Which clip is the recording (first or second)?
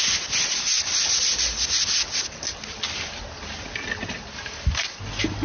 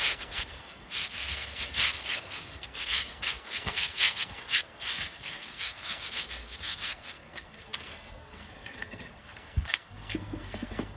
first